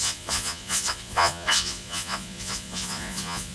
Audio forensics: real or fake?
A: fake